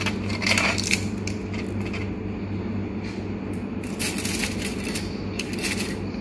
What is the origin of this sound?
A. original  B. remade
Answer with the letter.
A